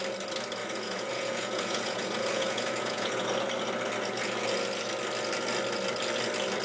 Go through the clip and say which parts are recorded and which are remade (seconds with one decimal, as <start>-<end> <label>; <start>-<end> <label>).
0.0-0.6 recorded; 0.6-3.3 remade; 3.3-6.6 recorded